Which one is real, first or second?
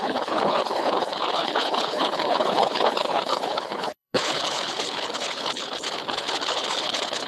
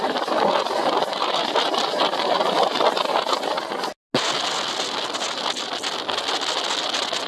second